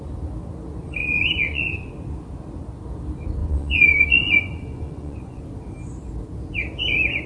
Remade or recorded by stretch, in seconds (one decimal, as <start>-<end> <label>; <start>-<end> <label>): 0.0-1.0 recorded; 1.0-1.9 remade; 1.9-3.4 recorded; 3.4-5.4 remade; 5.4-7.3 recorded